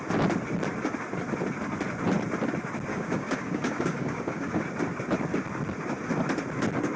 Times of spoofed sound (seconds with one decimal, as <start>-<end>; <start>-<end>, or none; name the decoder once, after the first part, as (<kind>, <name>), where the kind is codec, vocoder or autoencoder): 2.9-4.6 (codec, DAC)